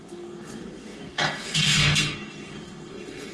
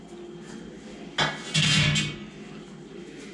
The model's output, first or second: first